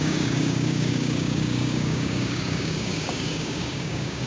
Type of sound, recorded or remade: remade